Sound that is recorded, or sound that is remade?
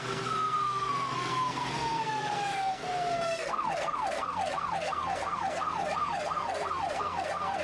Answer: remade